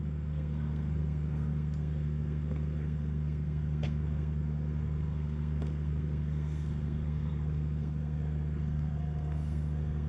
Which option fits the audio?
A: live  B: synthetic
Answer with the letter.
B